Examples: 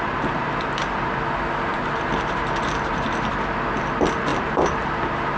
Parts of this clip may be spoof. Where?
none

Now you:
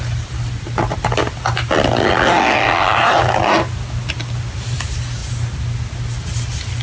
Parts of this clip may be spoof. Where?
none

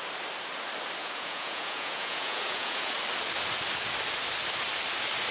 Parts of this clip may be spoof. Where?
1.0-2.9 (vocoder, Vocos)

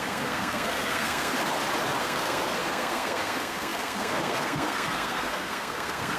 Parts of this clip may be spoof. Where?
0.0-1.3 (codec, SNAC); 2.0-6.2

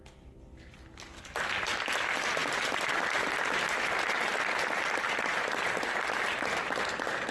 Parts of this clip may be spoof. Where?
1.1-1.6 (vocoder, BigVGAN v2)

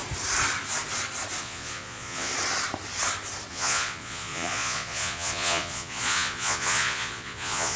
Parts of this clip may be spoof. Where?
1.4-2.3 (vocoder, Vocos); 3.5-7.8

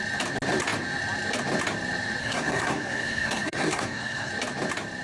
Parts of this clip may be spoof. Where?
2.2-4.3 (codec, SNAC)